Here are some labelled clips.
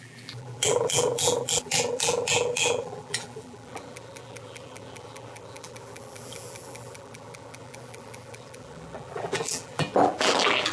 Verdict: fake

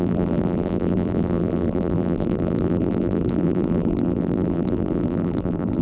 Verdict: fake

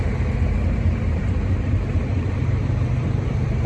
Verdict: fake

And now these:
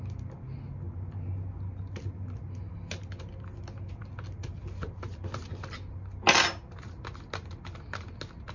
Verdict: real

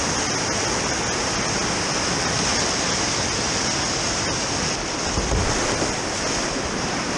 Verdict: real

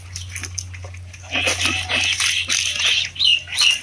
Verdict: real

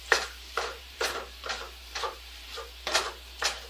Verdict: fake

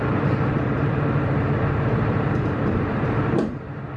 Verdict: fake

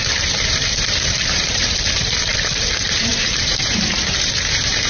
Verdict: fake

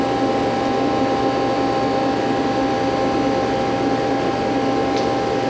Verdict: real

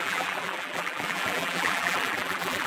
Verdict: fake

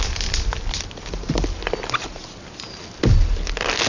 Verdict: real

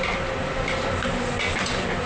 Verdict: real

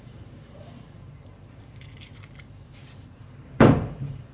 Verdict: fake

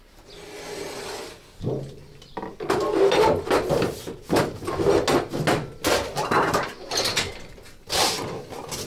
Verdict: real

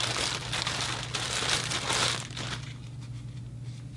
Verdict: real